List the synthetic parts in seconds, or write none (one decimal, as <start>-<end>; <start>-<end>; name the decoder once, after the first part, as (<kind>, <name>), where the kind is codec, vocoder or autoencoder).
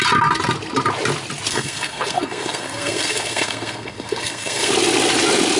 1.5-4.7 (codec, SNAC)